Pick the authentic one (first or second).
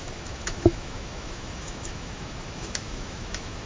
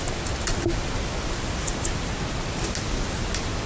second